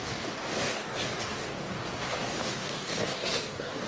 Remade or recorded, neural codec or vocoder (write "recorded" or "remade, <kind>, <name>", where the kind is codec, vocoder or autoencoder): remade, codec, DAC